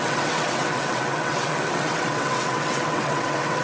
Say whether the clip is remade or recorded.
remade